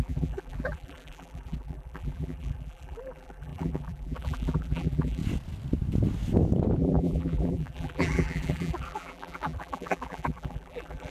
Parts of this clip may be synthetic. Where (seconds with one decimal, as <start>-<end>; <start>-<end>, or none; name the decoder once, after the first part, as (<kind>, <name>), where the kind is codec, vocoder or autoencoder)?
0.0-5.2 (vocoder, BigVGAN v2); 6.8-11.1